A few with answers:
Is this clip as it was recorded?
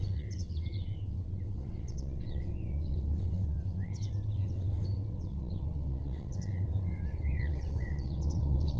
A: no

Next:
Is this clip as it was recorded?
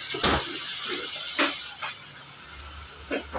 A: yes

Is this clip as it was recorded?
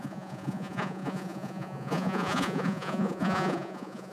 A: no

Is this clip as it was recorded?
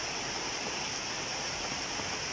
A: yes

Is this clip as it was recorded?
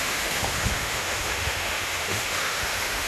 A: no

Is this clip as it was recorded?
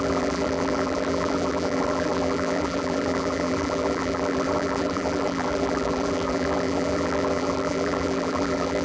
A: no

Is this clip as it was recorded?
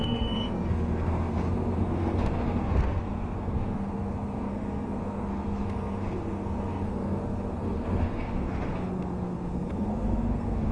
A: no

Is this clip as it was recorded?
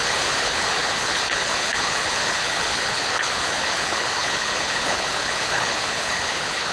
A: no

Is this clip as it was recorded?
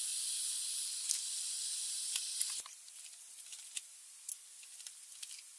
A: yes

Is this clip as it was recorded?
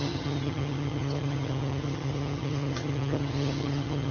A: no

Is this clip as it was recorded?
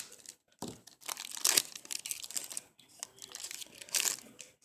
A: yes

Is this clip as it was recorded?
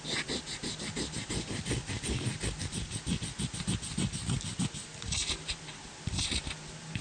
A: yes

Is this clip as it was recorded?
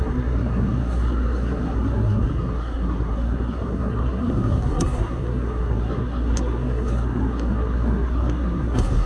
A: no